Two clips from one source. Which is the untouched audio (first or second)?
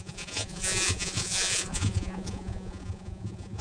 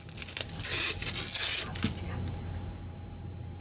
second